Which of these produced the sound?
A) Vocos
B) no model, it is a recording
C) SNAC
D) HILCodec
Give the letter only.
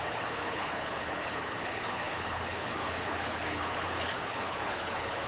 D